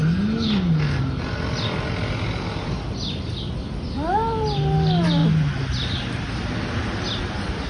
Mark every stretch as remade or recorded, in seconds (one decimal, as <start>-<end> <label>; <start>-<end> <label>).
0.0-7.7 recorded